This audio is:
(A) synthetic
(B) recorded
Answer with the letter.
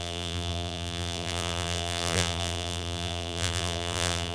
A